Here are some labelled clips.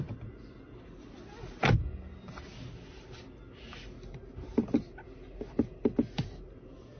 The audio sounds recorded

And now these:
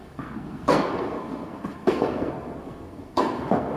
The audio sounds remade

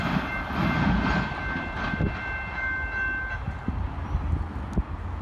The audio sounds recorded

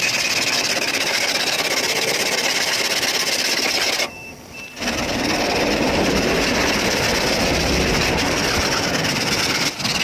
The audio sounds recorded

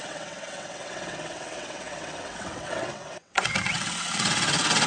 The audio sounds remade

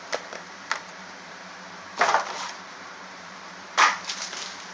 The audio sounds remade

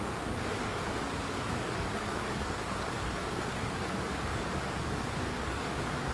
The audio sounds remade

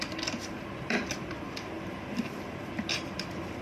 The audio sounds remade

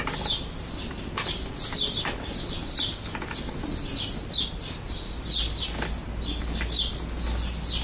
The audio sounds recorded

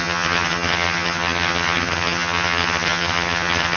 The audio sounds remade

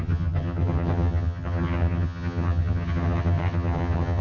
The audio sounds remade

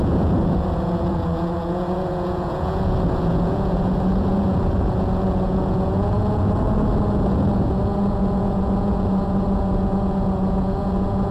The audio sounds remade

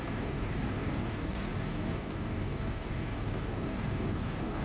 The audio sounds remade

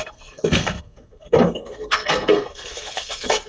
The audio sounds remade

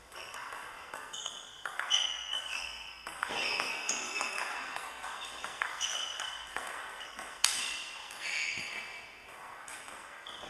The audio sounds remade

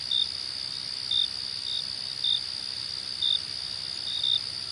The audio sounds recorded